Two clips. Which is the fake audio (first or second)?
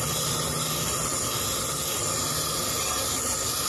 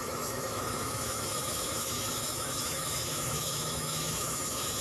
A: second